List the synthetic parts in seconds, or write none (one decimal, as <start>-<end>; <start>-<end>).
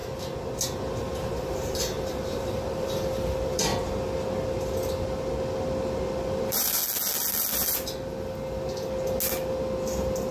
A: 1.1-3.7; 6.3-6.8